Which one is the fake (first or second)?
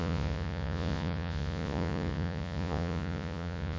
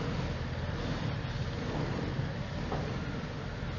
first